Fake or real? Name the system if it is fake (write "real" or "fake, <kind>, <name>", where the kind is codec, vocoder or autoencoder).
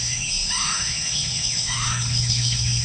fake, autoencoder, DAC-VAE